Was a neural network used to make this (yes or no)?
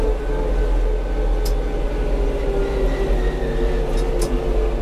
no